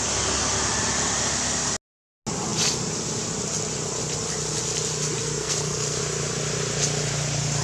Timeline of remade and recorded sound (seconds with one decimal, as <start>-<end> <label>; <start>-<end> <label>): 0.0-5.2 recorded; 5.2-6.0 remade; 6.0-7.6 recorded